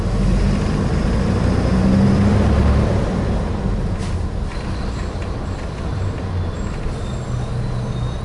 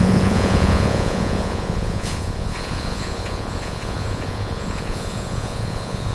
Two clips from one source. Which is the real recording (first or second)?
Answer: first